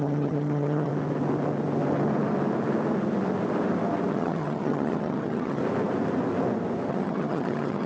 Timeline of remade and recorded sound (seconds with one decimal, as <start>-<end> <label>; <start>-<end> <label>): 0.0-0.9 remade; 0.9-4.1 recorded; 4.1-5.6 remade; 5.6-6.9 recorded; 6.9-7.9 remade